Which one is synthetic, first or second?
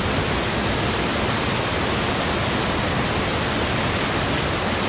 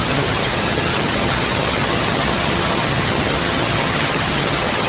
second